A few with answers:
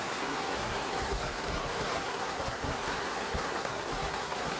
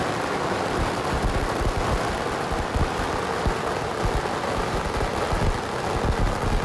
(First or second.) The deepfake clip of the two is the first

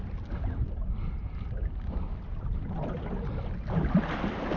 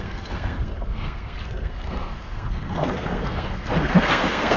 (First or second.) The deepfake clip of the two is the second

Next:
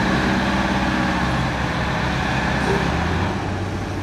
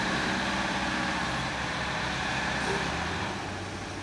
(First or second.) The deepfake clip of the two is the second